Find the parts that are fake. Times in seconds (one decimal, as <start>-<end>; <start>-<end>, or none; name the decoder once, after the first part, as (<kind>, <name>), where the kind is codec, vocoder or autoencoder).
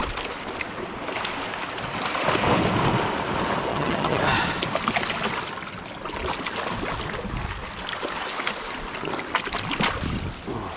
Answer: 3.7-4.2 (vocoder, HiFi-GAN)